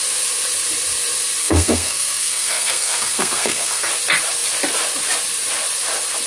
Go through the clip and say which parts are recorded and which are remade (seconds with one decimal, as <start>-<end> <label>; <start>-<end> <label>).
0.0-1.4 recorded; 1.4-3.9 remade; 3.9-6.3 recorded